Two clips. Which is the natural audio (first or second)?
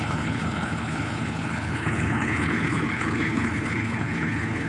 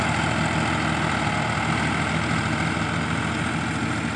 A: second